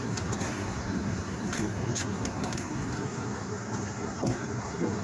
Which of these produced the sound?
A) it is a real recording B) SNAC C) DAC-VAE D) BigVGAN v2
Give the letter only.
B